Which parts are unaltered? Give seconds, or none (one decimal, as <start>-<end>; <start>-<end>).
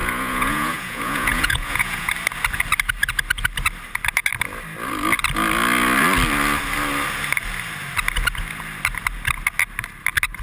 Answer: 2.1-10.4